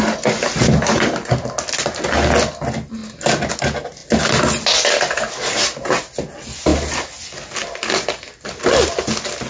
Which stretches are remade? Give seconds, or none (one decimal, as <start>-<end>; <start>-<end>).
none